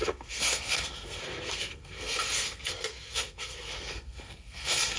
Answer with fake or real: fake